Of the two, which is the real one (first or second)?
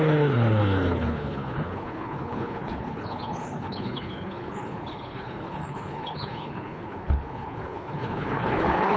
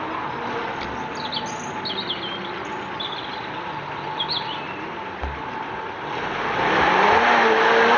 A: second